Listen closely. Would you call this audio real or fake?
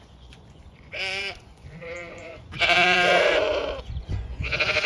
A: fake